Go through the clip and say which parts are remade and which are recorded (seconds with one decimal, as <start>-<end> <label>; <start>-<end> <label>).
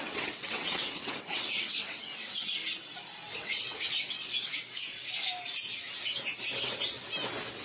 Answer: 0.0-2.6 remade; 2.6-3.4 recorded; 3.4-4.9 remade; 4.9-7.6 recorded